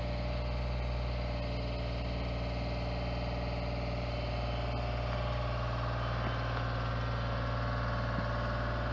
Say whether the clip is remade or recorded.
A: recorded